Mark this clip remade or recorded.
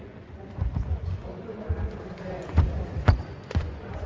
remade